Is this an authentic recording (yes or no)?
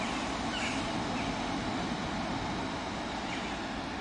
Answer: yes